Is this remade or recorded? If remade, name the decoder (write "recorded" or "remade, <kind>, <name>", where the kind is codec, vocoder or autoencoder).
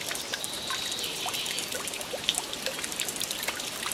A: recorded